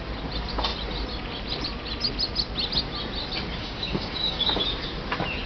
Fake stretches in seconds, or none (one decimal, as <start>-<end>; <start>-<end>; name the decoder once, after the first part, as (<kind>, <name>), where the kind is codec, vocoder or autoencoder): 3.6-4.6 (codec, DAC)